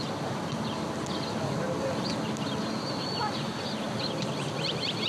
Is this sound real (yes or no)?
yes